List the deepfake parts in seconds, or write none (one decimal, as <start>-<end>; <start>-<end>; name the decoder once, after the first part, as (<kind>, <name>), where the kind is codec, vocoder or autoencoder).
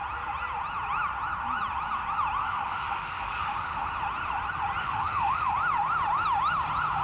2.4-3.9 (autoencoder, DAC-VAE); 4.8-5.5